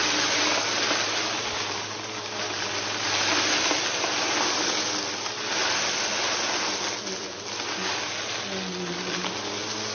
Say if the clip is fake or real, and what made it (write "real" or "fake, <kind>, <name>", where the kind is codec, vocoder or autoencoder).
real